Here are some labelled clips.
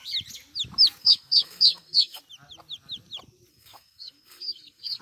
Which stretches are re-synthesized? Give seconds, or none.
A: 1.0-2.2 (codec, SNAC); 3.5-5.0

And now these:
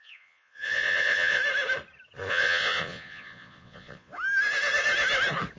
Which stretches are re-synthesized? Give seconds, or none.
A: 0.0-1.4 (vocoder, Vocos); 2.3-4.1

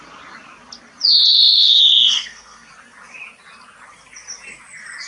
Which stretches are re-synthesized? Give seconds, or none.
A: 1.3-2.7 (codec, SNAC)

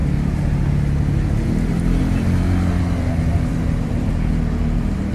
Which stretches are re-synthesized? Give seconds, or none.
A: 3.5-4.1 (vocoder, BigVGAN v2)

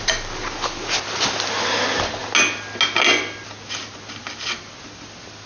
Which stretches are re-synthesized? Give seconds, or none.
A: none

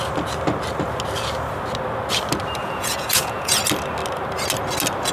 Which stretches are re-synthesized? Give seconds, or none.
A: 2.6-3.6 (vocoder, Vocos)

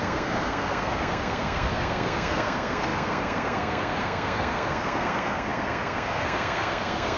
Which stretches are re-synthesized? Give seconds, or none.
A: 0.0-7.2 (codec, SNAC)